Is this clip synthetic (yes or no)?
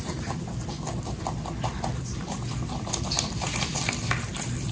yes